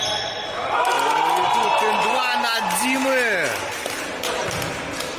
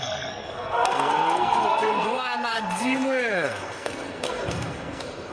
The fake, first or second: second